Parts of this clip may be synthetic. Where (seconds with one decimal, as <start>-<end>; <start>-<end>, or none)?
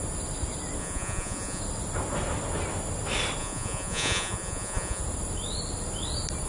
0.8-1.6; 3.4-5.0